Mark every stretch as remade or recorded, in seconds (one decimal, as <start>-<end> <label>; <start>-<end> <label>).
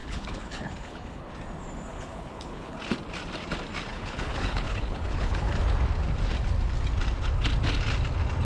0.0-1.3 remade; 1.3-1.9 recorded; 1.9-2.8 remade; 2.8-3.9 recorded; 3.9-5.5 remade; 5.5-8.4 recorded